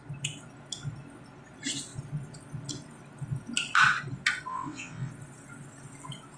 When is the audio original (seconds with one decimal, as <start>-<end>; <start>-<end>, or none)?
0.0-4.5; 5.1-6.4